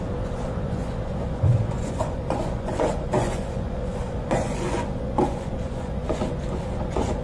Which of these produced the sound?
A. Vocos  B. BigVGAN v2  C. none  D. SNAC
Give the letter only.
A